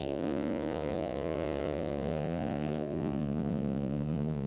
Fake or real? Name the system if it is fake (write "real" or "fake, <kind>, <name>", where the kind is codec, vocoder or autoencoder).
fake, vocoder, Vocos